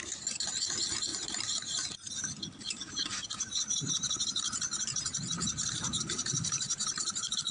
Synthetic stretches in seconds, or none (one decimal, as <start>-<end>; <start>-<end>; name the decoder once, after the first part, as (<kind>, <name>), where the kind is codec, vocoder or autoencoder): 1.1-2.1 (vocoder, BigVGAN v2); 2.6-7.1